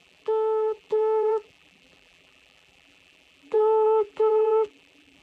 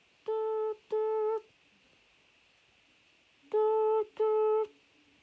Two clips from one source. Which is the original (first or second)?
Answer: second